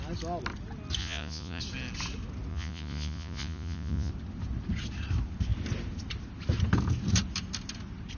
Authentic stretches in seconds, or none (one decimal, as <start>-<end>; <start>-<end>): 0.0-1.0; 1.6-2.5; 4.1-8.2